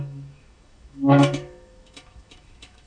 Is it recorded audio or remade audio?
remade